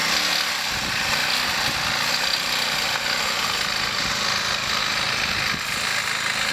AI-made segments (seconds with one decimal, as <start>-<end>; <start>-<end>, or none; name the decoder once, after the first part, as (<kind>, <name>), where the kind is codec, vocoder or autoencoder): none